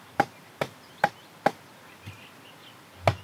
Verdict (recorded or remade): recorded